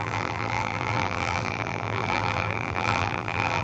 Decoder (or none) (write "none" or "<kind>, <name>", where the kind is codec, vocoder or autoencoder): vocoder, BigVGAN v2